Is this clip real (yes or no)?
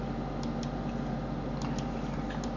yes